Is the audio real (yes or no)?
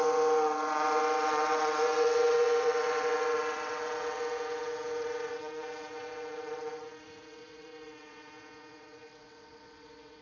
no